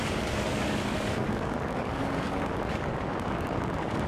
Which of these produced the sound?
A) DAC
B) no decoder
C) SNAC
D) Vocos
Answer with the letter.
A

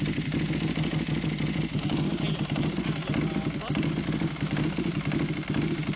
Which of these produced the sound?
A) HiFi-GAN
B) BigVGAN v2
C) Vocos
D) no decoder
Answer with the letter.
D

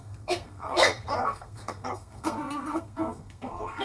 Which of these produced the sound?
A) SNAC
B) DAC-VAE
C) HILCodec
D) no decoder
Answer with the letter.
A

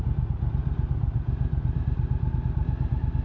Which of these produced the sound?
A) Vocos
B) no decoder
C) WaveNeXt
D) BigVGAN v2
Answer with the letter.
B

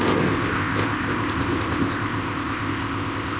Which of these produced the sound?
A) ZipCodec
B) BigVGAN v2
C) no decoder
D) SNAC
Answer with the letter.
A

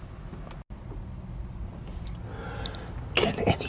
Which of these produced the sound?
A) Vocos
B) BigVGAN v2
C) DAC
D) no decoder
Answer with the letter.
D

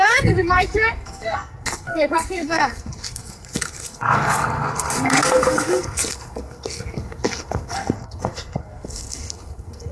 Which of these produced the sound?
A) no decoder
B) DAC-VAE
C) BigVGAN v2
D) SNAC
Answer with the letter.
D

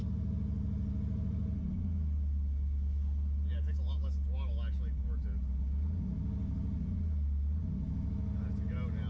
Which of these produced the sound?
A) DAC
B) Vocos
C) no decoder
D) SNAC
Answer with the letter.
C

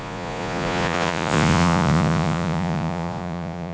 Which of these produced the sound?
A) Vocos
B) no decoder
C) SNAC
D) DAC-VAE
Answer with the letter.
A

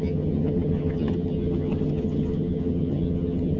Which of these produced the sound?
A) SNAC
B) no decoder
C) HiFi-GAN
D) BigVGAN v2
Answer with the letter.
C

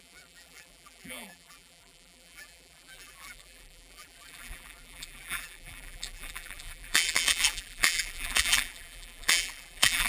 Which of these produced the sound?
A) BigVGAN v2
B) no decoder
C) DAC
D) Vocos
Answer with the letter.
A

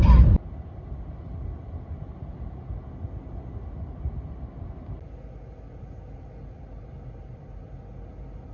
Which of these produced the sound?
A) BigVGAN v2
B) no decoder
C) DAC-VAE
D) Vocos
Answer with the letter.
B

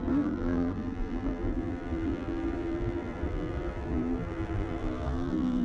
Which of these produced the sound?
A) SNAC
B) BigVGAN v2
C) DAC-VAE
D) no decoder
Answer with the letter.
B